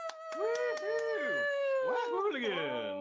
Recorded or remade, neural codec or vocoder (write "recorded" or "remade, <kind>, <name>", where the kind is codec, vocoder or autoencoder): recorded